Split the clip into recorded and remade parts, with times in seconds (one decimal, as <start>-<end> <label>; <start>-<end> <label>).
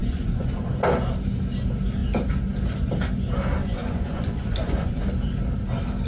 0.0-0.7 remade; 0.7-3.6 recorded; 3.6-5.1 remade; 5.1-6.1 recorded